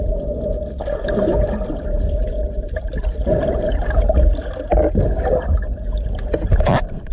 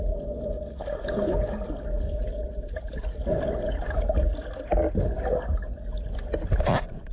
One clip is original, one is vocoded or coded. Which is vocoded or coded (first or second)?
first